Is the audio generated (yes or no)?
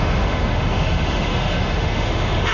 yes